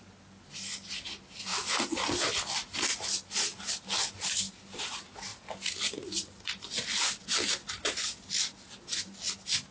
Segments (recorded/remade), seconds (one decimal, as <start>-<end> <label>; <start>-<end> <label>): 0.0-9.7 recorded